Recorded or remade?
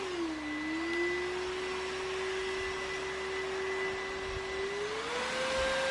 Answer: recorded